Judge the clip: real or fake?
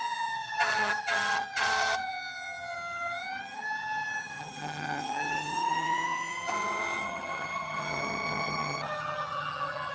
fake